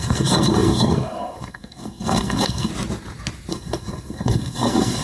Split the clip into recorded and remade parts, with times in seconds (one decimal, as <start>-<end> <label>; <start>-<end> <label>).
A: 0.0-2.7 remade; 2.7-3.5 recorded; 3.5-5.0 remade